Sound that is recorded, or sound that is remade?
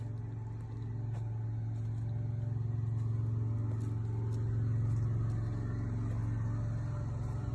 recorded